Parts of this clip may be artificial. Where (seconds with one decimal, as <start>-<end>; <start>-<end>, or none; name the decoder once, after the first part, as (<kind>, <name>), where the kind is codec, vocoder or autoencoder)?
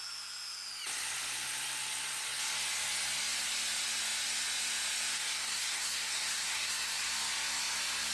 5.1-7.1 (codec, SNAC)